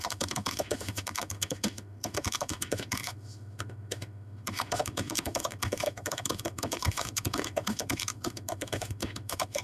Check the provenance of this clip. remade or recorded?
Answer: remade